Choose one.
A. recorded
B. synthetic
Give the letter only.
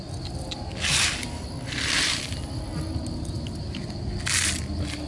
A